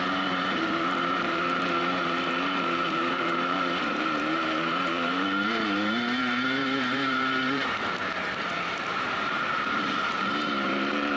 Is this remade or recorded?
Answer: remade